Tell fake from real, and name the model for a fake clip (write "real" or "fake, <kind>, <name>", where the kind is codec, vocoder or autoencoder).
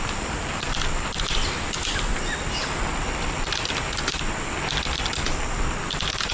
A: real